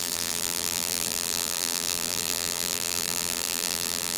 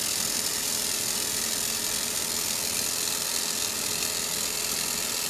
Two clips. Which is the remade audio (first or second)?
first